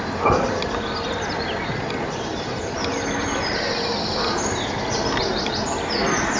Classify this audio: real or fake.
real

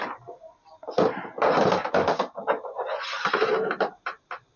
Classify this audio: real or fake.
real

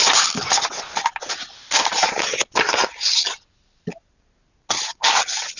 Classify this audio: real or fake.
real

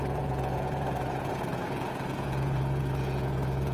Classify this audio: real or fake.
fake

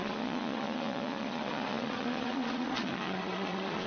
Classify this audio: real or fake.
fake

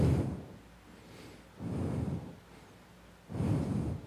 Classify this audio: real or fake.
real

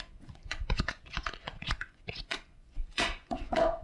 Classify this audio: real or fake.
fake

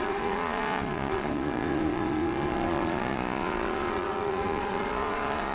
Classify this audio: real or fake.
fake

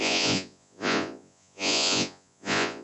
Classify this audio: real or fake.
fake